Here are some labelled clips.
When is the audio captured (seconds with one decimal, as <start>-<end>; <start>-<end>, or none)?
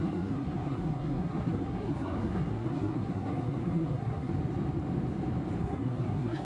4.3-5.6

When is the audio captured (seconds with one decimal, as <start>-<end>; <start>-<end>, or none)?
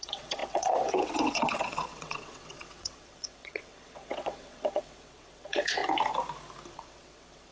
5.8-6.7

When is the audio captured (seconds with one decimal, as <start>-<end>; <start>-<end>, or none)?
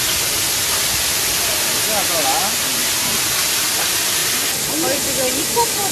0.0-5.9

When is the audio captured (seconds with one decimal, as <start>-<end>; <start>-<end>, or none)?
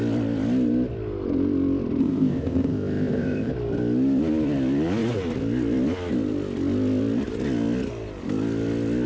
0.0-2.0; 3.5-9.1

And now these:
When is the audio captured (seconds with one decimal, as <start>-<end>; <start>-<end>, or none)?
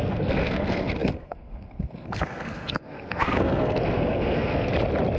4.7-5.2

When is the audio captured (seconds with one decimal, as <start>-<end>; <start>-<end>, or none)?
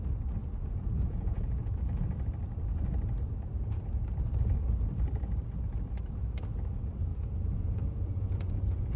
0.0-0.4; 1.7-7.1